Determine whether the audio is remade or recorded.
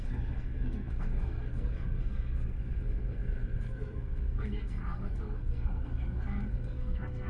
remade